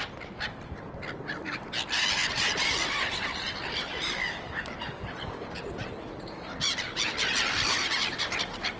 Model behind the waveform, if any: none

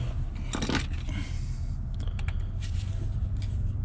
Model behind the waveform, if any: none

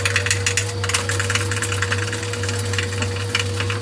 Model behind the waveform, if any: none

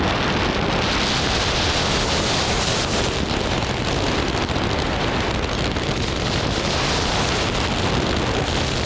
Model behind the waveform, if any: none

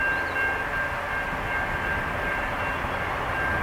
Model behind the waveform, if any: none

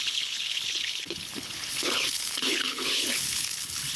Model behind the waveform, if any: codec, HILCodec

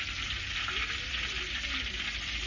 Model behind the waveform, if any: none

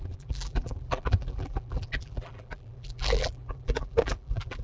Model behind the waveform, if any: vocoder, BigVGAN v2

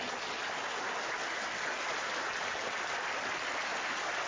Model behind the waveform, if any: none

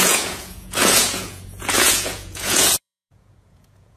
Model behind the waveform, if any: vocoder, Vocos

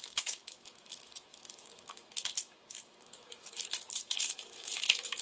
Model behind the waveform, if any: autoencoder, DAC-VAE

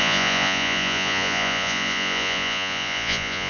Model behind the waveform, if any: vocoder, Vocos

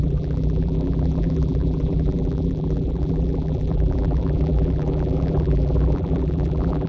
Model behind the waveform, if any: vocoder, BigVGAN v2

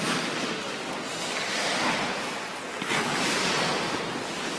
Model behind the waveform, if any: none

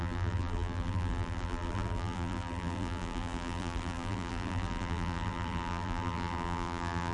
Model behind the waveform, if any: vocoder, BigVGAN v2